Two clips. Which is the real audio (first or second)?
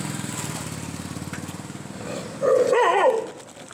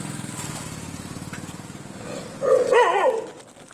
second